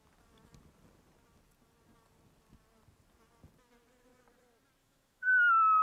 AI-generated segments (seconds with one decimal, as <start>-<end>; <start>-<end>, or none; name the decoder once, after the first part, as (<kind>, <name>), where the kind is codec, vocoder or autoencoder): 4.8-5.8 (autoencoder, DAC-VAE)